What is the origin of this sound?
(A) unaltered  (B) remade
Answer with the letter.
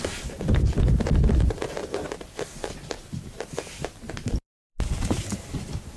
B